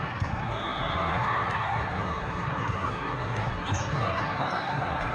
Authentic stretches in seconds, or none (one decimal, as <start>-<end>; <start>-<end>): none